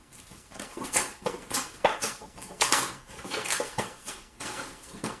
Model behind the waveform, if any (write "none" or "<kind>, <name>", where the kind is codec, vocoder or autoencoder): codec, SNAC